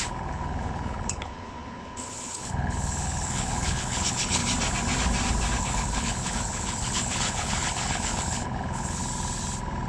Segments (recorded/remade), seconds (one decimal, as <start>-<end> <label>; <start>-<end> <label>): 0.0-4.4 remade; 4.4-5.6 recorded; 5.6-9.0 remade; 9.0-9.9 recorded